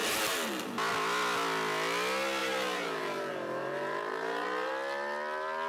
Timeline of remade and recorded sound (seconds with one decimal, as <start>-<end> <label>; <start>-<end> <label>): 0.0-2.4 recorded; 2.4-4.7 remade; 4.7-5.7 recorded